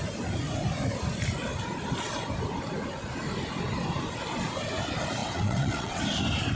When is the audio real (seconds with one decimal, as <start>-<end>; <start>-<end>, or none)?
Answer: 0.0-5.2; 6.0-6.6